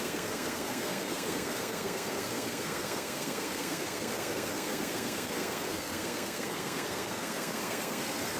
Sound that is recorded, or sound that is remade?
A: remade